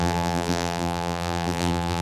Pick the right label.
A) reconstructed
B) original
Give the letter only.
A